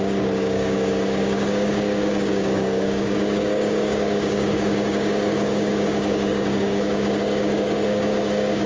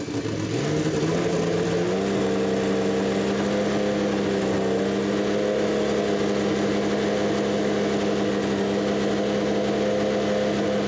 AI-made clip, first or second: first